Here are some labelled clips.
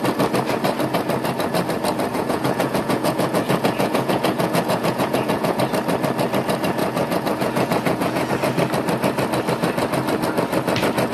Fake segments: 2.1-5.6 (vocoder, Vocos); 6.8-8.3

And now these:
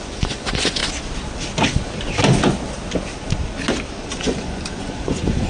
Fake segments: 0.0-0.8 (vocoder, Vocos); 4.1-5.5

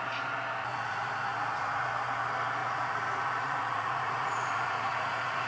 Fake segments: 0.7-1.9 (vocoder, Vocos); 2.6-5.5

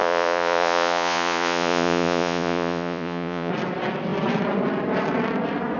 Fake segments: 0.0-3.5 (vocoder, Vocos)